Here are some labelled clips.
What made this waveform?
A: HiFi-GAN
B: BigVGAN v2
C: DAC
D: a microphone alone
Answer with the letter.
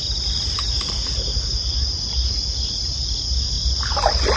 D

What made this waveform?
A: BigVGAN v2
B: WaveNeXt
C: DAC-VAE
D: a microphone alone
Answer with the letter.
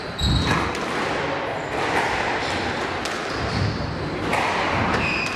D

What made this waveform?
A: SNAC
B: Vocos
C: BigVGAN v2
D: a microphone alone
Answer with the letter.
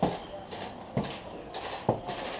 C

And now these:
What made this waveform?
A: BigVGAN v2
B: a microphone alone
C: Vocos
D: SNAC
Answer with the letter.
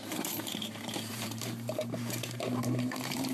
A